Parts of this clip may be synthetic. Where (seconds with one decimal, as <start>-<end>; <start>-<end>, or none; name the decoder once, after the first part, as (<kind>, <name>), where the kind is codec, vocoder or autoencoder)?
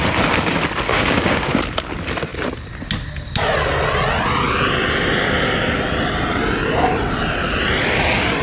0.9-1.5 (codec, DAC)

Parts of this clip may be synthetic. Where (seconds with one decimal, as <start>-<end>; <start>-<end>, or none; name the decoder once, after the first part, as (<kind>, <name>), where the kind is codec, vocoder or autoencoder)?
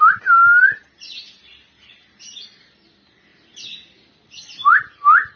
none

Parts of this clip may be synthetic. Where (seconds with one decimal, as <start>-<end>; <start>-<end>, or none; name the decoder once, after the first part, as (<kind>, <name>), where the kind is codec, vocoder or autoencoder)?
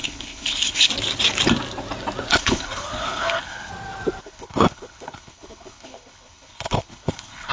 0.0-0.9 (codec, HILCodec); 2.3-3.7; 4.2-7.5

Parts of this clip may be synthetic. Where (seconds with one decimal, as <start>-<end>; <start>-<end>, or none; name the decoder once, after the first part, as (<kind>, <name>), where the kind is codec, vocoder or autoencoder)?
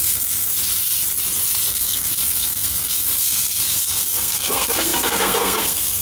0.0-0.5 (codec, SNAC); 1.7-6.0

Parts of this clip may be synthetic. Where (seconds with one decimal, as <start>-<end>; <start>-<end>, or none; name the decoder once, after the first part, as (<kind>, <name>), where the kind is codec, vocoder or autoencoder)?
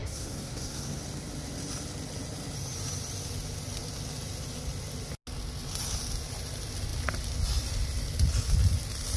0.0-1.0 (codec, SNAC)